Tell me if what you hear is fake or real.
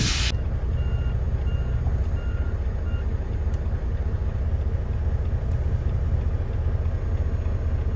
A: real